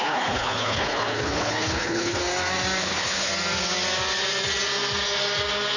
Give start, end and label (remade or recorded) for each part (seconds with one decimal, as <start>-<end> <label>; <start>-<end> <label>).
0.0-2.2 remade; 2.2-2.8 recorded; 2.8-3.3 remade; 3.3-5.8 recorded